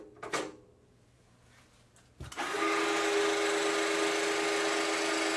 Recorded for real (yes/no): yes